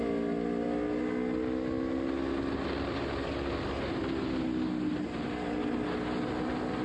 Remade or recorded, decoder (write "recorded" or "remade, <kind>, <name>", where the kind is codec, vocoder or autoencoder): recorded